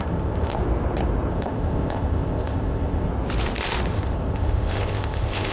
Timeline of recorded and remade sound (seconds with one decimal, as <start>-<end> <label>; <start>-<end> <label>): 0.0-0.5 remade; 0.5-1.3 recorded; 1.3-3.1 remade; 3.1-3.9 recorded; 3.9-5.5 remade